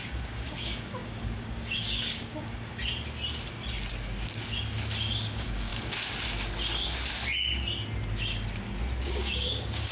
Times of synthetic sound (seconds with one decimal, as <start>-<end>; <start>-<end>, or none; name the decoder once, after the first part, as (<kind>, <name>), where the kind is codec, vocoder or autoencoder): 0.0-2.8 (codec, DAC); 5.2-5.7; 9.0-9.9